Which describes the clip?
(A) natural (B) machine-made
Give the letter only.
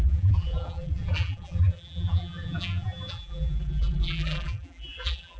B